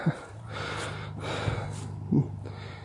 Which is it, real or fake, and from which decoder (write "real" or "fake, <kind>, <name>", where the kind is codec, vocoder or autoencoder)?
real